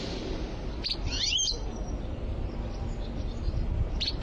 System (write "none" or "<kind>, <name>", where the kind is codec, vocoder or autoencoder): none